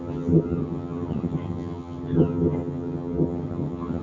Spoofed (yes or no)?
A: yes